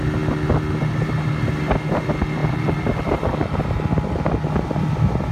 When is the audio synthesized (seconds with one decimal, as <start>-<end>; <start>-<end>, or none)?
2.4-3.9